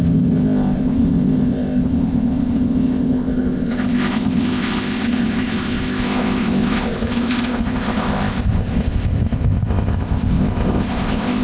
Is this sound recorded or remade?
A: remade